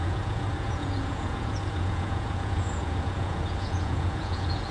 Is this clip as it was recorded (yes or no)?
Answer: no